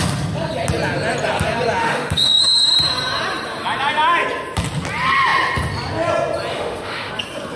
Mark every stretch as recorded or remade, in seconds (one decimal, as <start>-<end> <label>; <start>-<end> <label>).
0.0-1.8 recorded; 1.8-2.4 remade; 2.4-6.5 recorded; 6.5-7.1 remade; 7.1-7.6 recorded